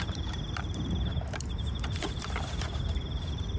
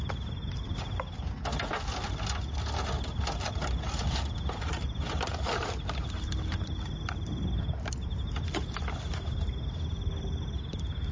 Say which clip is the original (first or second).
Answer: second